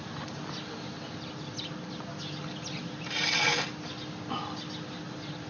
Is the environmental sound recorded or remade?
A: recorded